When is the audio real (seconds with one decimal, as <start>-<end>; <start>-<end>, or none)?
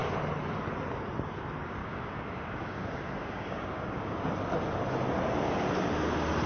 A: 0.0-1.8; 4.2-6.5